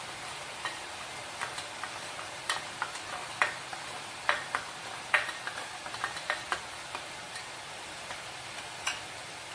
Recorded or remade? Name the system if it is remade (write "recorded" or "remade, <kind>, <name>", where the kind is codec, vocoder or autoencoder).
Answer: recorded